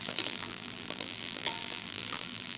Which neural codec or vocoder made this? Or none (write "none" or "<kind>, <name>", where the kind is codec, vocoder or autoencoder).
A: vocoder, BigVGAN v2